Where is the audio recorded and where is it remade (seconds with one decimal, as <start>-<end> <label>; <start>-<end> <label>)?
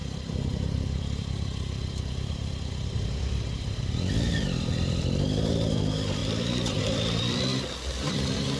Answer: 0.0-2.7 recorded; 2.7-7.5 remade; 7.5-8.1 recorded; 8.1-8.6 remade